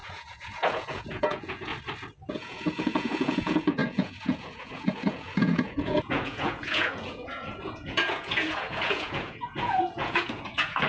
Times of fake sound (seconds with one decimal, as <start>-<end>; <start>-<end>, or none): 0.0-1.7; 2.3-10.9